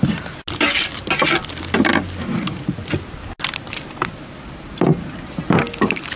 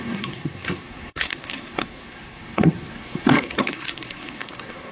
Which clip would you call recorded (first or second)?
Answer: first